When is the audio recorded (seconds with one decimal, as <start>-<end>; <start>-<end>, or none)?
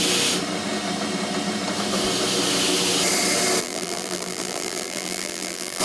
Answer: 0.0-3.6